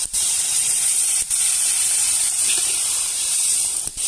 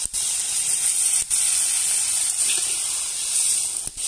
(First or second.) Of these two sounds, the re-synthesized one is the first